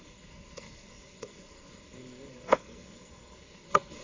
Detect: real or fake fake